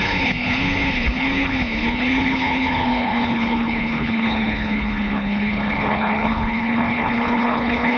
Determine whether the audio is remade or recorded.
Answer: remade